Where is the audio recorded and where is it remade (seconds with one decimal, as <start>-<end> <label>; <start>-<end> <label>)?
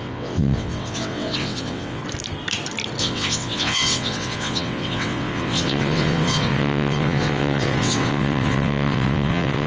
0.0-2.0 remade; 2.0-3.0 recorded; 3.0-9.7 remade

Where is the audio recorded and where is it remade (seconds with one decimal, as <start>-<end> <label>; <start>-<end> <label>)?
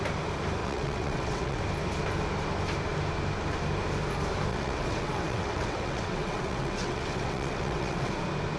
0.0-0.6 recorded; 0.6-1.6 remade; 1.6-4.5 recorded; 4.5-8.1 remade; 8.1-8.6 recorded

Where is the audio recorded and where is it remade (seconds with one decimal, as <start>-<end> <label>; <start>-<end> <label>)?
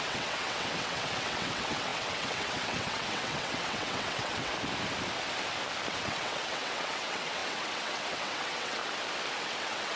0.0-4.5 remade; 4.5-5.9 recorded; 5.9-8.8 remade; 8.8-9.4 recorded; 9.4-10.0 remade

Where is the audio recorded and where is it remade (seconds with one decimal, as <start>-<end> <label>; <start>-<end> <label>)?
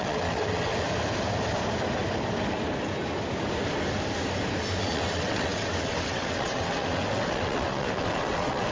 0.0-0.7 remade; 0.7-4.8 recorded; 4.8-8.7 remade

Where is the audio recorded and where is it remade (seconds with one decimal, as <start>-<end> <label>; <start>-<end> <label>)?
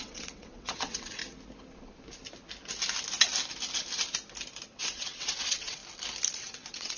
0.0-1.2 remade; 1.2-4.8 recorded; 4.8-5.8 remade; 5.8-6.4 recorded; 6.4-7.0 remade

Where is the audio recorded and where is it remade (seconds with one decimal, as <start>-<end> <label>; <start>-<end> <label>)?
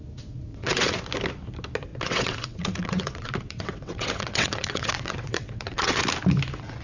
0.0-0.5 recorded; 0.5-1.0 remade; 1.0-1.9 recorded; 1.9-6.0 remade; 6.0-6.8 recorded